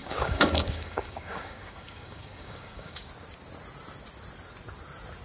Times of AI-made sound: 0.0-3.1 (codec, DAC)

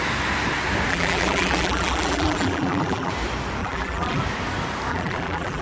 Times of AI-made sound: 0.9-3.1 (vocoder, BigVGAN v2); 3.6-4.2; 4.9-5.6

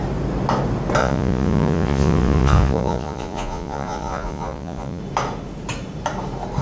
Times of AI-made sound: 1.0-5.0 (vocoder, Vocos)

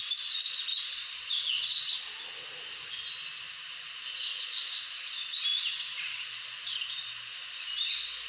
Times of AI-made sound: 0.7-1.8 (vocoder, Vocos)

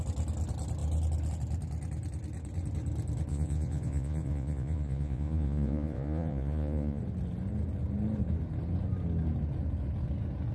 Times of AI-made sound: 3.3-7.0 (vocoder, Vocos)